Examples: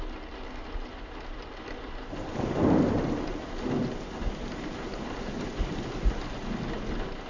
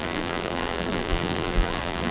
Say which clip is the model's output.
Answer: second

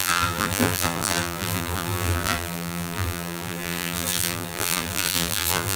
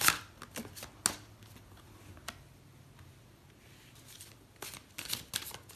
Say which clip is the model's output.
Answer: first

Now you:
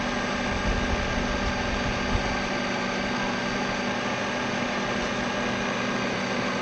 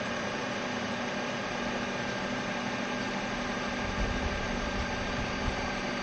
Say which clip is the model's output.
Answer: second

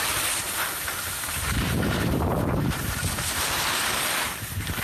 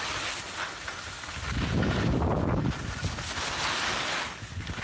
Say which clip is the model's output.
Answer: first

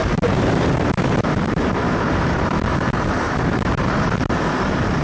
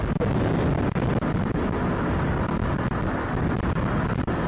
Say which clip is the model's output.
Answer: first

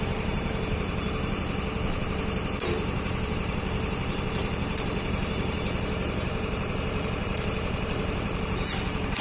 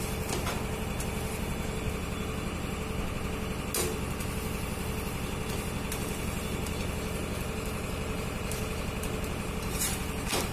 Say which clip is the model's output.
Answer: first